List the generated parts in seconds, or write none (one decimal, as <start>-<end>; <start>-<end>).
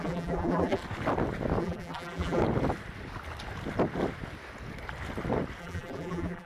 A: 0.0-0.8; 1.6-2.4; 5.6-6.5